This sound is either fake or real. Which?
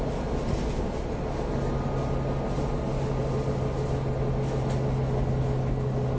real